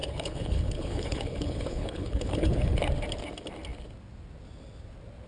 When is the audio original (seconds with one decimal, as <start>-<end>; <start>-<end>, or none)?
2.8-5.3